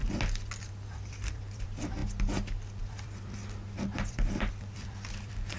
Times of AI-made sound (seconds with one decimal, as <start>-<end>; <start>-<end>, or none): 0.6-2.0; 2.8-3.4; 4.1-5.6